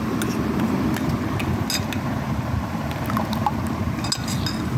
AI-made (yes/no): no